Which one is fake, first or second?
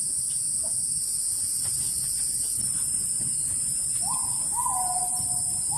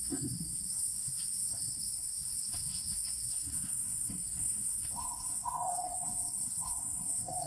second